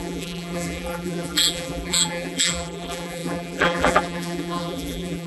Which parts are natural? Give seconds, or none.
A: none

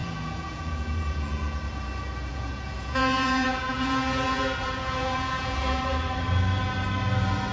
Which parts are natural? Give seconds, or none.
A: 1.6-2.3; 5.8-7.5

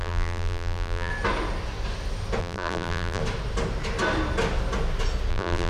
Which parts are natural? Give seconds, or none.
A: 1.1-2.4; 3.2-5.3

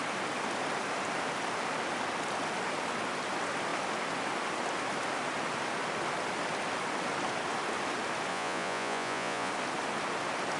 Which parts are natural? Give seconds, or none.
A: 0.0-8.3; 9.5-10.6

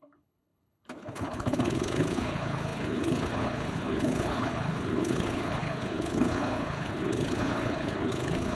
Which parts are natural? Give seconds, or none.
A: none

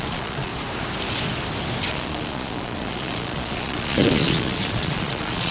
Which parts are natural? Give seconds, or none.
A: 0.5-1.9

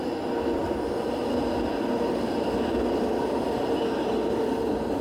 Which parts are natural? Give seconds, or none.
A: 0.0-5.0

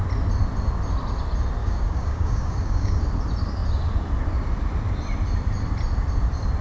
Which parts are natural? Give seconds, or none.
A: 0.0-1.6; 3.0-6.6